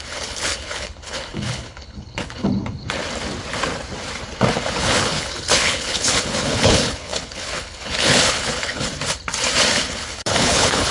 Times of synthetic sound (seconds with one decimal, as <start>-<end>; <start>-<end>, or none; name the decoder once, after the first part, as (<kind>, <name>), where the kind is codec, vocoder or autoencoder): 0.0-3.0 (codec, HILCodec); 4.7-8.9; 9.9-10.9